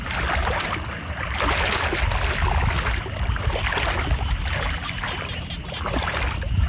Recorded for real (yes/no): yes